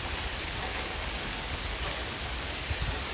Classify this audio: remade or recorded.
remade